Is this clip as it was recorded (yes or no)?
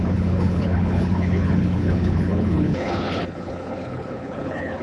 no